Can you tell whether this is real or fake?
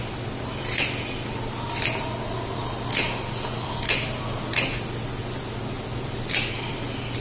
real